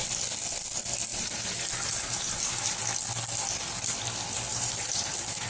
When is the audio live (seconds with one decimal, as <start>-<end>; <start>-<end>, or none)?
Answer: 0.0-1.1; 2.8-4.5; 5.1-5.5

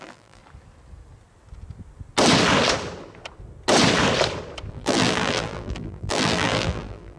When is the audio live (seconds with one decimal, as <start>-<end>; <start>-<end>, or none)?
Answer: 0.4-4.7

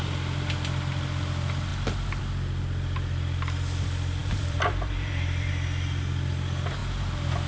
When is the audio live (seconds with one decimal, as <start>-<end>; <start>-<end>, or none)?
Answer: 0.0-4.2; 5.5-7.5

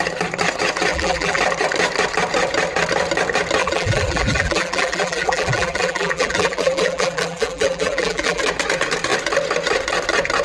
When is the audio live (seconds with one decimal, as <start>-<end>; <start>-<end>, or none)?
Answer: 0.0-0.9; 1.4-3.6; 8.4-10.4

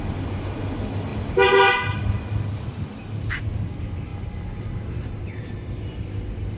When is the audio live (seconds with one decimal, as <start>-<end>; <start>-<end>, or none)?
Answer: 0.0-4.1; 5.4-6.6

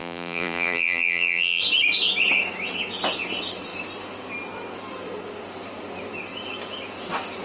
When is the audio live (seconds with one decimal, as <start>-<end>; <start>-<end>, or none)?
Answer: 1.6-7.4